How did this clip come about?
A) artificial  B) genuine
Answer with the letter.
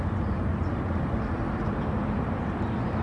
B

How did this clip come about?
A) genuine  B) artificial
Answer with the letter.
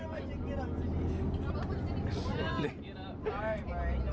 A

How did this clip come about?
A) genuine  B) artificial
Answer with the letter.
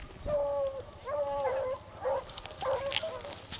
A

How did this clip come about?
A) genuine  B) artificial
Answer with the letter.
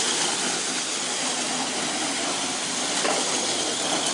A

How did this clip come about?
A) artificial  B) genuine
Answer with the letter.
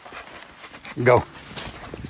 B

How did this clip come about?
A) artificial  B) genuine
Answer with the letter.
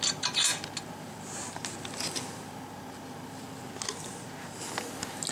B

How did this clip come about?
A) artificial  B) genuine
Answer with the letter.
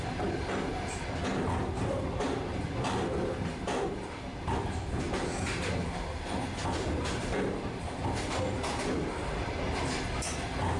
B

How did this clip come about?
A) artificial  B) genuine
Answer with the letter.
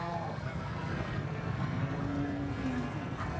A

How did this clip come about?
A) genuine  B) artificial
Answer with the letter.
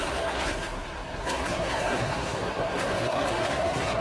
B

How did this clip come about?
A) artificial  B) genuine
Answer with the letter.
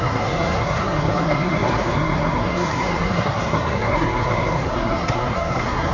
A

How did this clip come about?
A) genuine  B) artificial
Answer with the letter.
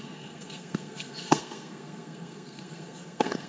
B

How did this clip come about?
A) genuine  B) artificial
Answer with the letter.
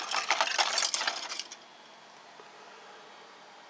A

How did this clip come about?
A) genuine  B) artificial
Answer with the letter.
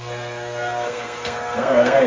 B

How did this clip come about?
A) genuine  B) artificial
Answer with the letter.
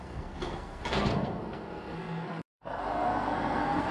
B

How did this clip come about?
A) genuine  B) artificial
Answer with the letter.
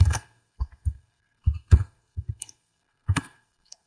B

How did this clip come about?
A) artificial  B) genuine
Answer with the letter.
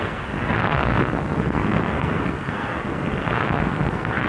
A